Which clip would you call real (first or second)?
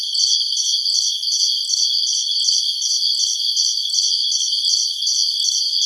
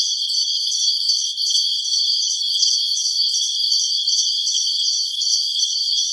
first